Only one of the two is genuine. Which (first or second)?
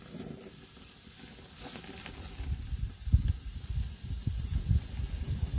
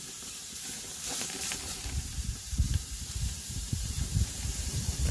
first